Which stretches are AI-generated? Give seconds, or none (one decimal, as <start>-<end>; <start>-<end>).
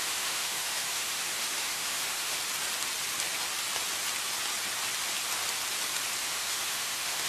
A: 0.0-2.4; 6.2-7.3